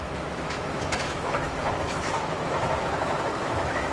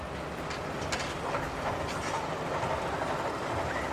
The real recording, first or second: second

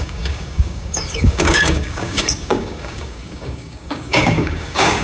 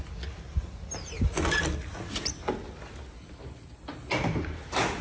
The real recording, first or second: second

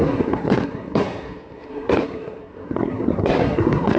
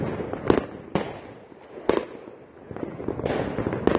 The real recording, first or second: second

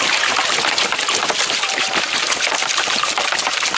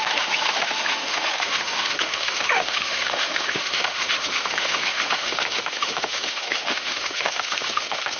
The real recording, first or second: first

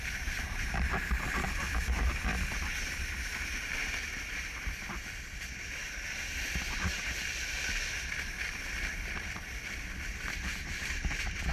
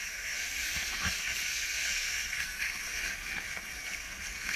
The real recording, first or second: first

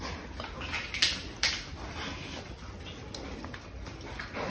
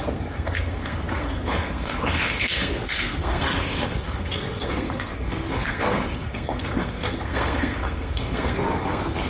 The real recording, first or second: first